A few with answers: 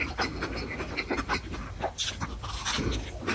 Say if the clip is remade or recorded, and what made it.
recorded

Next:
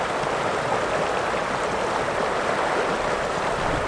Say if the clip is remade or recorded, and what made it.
recorded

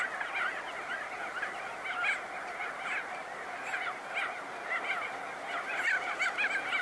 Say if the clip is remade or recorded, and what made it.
recorded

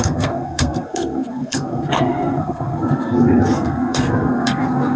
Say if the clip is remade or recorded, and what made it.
remade, codec, SNAC